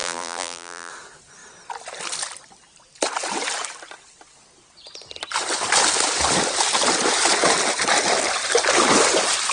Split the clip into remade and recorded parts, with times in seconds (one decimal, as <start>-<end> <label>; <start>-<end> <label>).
0.0-0.9 remade; 0.9-9.5 recorded